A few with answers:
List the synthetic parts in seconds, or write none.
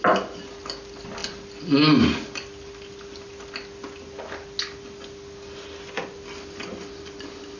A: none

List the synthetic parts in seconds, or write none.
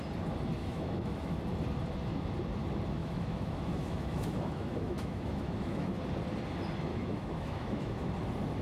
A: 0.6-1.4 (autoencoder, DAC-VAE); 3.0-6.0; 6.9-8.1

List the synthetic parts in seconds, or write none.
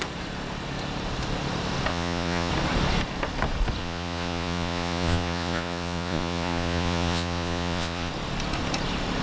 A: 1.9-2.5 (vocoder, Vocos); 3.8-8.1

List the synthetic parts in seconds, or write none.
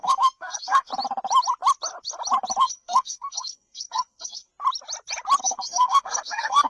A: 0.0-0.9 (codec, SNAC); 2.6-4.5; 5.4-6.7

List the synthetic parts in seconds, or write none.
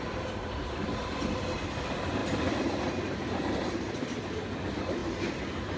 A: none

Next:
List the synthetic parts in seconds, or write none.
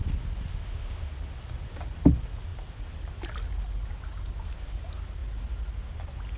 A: 0.5-1.1 (autoencoder, DAC-VAE)